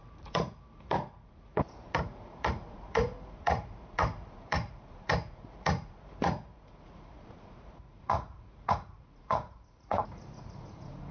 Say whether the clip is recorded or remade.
remade